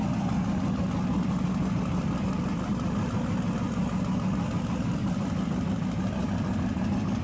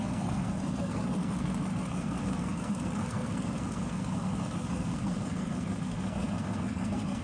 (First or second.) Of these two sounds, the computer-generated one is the second